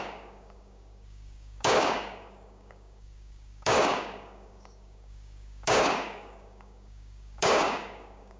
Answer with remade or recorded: remade